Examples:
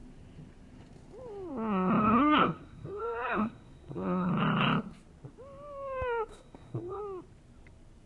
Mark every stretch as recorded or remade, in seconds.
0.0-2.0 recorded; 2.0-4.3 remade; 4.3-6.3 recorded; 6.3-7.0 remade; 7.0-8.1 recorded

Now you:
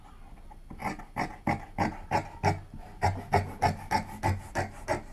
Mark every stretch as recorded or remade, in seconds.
0.0-5.1 recorded

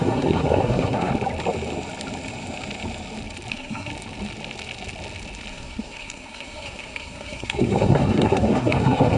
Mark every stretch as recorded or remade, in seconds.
0.0-1.1 remade; 1.1-3.5 recorded; 3.5-3.9 remade; 3.9-5.5 recorded; 5.5-9.2 remade

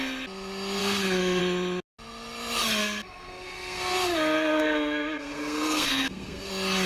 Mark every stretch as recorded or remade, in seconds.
0.0-0.8 recorded; 0.8-1.4 remade; 1.4-2.8 recorded; 2.8-6.5 remade; 6.5-6.9 recorded

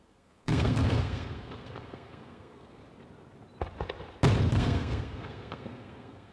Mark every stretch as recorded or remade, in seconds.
0.0-2.8 remade; 2.8-4.5 recorded; 4.5-6.3 remade